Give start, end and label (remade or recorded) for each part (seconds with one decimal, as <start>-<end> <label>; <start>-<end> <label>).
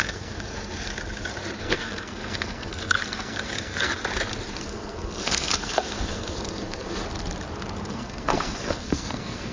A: 0.0-0.9 remade; 0.9-1.6 recorded; 1.6-3.9 remade; 3.9-4.5 recorded; 4.5-7.0 remade; 7.0-7.9 recorded; 7.9-9.5 remade